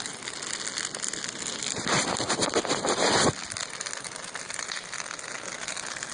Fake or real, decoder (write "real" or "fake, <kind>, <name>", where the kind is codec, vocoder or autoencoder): real